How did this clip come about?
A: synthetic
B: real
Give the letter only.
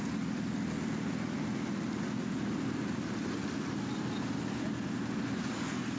B